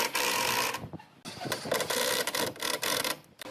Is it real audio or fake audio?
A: real